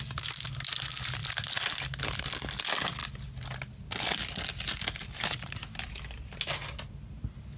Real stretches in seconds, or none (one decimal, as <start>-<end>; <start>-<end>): 0.0-7.6